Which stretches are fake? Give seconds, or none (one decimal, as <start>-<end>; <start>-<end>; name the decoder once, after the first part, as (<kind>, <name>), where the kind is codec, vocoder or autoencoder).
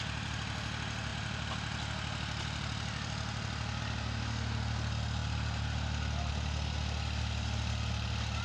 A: none